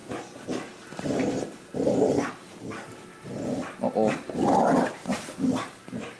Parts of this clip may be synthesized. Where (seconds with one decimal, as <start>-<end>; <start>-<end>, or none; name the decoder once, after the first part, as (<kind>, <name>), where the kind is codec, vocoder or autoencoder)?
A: 0.0-6.2 (vocoder, BigVGAN v2)